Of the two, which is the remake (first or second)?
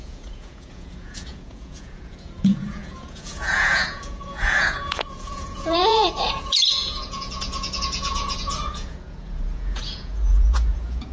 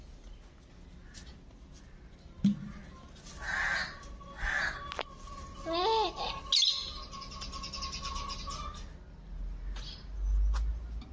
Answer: first